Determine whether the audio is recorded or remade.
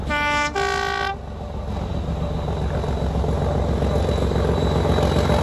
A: recorded